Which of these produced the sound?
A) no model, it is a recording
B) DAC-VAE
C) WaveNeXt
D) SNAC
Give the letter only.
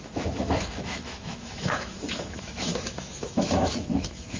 B